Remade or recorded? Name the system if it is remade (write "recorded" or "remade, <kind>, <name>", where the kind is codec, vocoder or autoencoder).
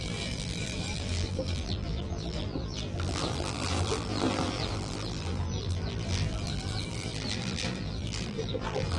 remade, vocoder, BigVGAN v2